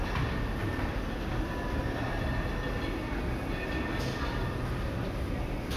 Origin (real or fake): real